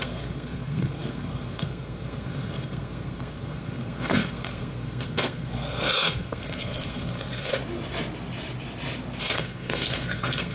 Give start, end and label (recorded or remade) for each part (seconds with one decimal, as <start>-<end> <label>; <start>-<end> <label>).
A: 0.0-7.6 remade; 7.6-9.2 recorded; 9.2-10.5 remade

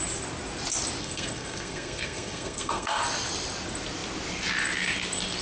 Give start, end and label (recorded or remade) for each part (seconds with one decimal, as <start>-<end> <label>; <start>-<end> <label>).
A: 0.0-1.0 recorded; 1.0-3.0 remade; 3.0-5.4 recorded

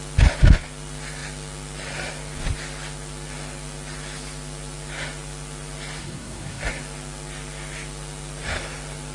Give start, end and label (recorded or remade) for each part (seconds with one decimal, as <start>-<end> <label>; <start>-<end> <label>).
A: 0.0-6.0 recorded; 6.0-6.6 remade; 6.6-9.1 recorded